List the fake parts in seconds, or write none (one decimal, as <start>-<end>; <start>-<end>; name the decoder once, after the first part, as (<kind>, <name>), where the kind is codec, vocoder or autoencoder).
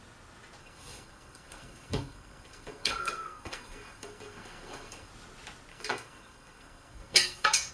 0.6-5.1 (codec, SNAC); 5.7-7.7